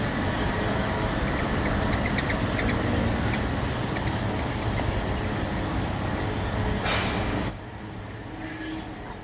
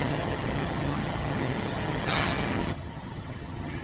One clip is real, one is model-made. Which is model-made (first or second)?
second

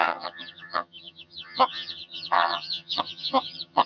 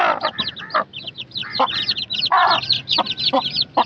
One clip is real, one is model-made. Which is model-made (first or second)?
first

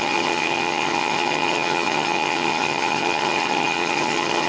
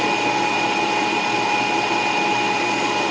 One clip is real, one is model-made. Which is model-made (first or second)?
first